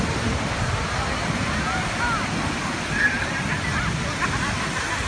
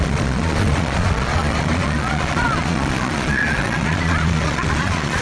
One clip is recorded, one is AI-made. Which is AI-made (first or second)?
second